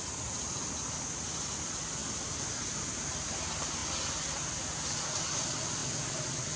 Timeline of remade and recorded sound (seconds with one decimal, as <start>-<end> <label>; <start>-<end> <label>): 0.0-6.6 recorded